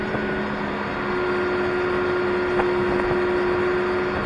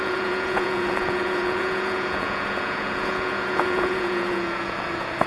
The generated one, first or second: second